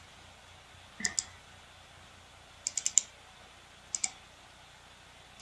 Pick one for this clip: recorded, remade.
recorded